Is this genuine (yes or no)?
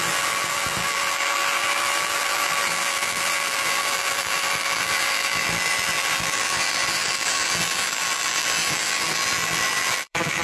no